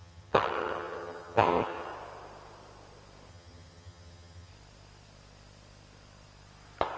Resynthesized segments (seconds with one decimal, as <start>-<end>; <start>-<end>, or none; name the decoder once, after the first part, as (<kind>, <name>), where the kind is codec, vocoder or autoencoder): 0.0-1.9 (vocoder, HiFi-GAN); 3.3-4.5